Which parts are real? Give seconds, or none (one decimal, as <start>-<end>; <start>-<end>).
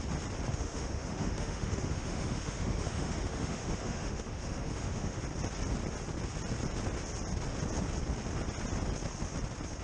0.0-0.5; 5.2-9.8